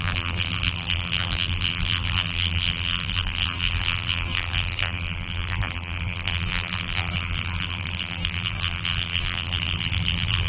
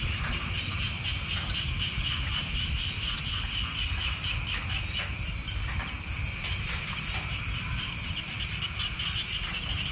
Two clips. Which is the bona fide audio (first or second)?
second